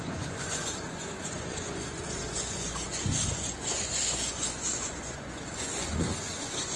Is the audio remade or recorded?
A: remade